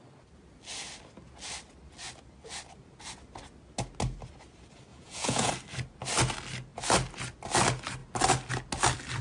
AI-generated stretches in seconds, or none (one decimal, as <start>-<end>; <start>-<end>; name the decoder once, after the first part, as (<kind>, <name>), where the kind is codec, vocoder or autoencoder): 4.9-5.5 (vocoder, Vocos)